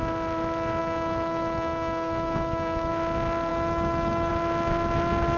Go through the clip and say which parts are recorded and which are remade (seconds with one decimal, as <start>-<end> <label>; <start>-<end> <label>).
0.0-0.8 recorded; 0.8-2.9 remade; 2.9-3.5 recorded; 3.5-4.3 remade; 4.3-5.4 recorded